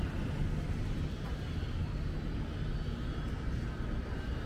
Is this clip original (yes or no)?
yes